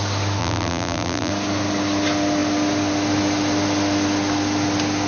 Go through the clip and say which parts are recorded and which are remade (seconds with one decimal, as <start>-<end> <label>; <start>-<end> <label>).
0.0-0.4 recorded; 0.4-1.3 remade; 1.3-5.1 recorded